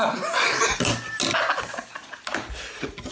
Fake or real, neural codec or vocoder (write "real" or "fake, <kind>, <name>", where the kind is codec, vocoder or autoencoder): real